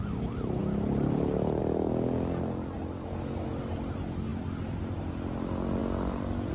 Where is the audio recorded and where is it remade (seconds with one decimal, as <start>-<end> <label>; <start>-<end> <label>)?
0.0-6.5 recorded